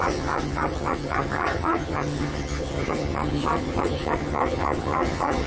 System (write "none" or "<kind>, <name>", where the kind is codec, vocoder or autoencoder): vocoder, HiFi-GAN